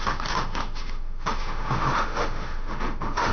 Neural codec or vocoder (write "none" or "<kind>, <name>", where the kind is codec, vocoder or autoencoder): autoencoder, DAC-VAE